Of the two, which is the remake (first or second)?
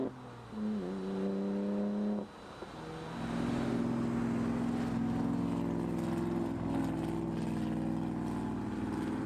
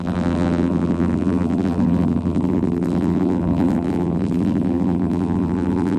second